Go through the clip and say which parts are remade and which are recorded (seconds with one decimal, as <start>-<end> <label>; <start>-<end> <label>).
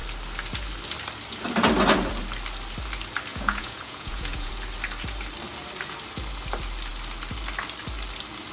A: 0.0-3.3 recorded; 3.3-4.5 remade; 4.5-8.5 recorded